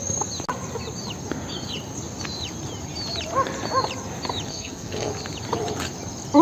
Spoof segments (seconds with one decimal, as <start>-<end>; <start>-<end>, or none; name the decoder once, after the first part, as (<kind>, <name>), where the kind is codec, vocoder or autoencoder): 4.5-5.1 (codec, SNAC)